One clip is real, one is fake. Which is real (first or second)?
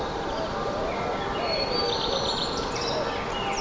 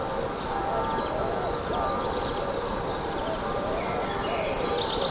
first